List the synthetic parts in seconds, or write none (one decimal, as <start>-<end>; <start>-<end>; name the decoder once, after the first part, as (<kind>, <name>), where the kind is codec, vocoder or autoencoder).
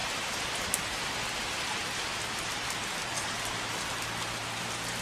0.0-0.6 (vocoder, BigVGAN v2); 1.8-3.7